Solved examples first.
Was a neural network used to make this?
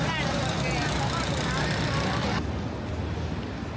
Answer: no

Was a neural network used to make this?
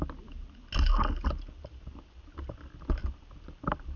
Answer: no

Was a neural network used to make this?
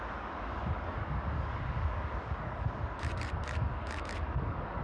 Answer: yes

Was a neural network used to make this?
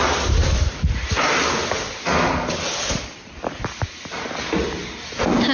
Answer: no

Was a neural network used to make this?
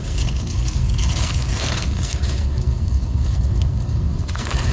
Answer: yes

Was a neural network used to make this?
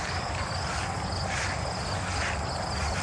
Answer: no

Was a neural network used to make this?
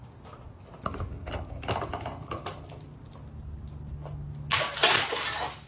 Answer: no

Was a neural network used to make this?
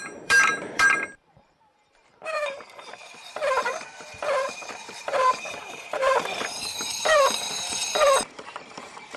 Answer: yes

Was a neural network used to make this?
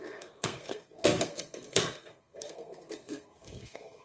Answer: yes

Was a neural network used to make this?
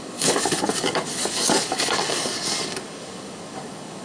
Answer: yes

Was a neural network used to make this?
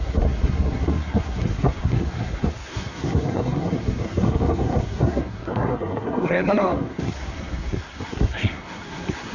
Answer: yes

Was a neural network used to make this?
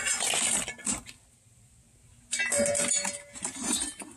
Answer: no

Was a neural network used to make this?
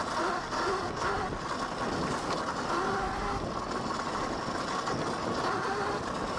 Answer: no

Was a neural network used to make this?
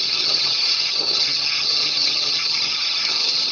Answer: yes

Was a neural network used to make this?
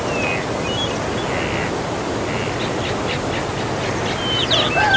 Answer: no